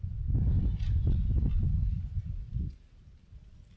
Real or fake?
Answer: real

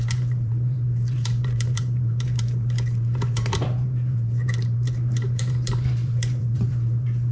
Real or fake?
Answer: fake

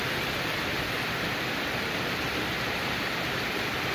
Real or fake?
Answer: real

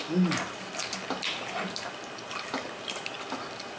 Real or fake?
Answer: real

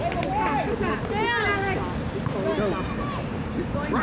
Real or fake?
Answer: real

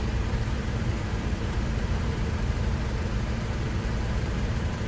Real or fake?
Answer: fake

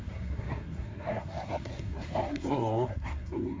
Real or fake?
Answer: fake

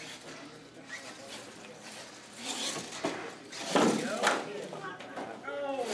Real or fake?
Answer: real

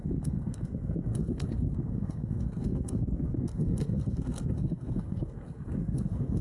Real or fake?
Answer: fake